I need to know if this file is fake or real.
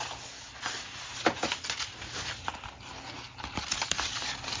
real